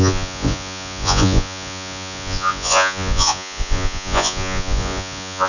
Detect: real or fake fake